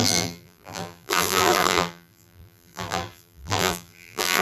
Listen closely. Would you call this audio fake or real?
fake